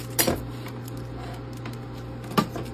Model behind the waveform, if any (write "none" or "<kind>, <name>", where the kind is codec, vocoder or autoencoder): none